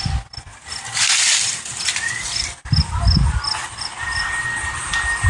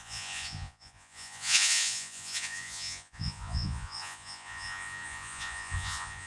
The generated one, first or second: second